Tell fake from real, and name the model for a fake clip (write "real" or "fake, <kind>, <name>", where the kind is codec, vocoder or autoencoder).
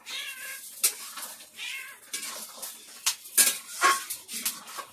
real